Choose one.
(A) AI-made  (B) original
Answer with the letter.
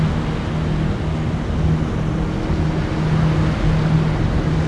B